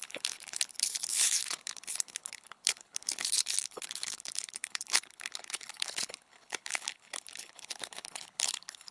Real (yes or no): no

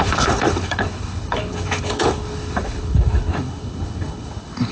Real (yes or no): no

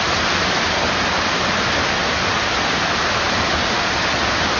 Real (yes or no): yes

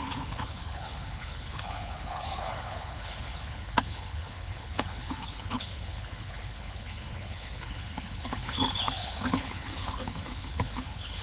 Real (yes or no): no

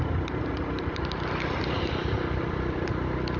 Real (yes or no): yes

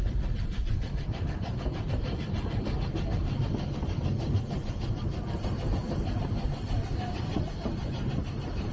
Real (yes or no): yes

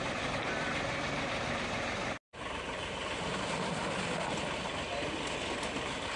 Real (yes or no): yes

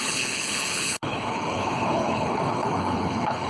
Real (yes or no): no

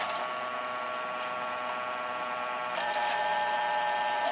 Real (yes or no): yes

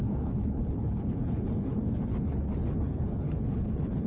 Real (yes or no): no